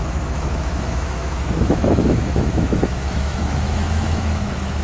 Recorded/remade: remade